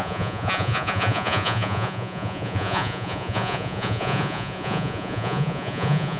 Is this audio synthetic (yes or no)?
yes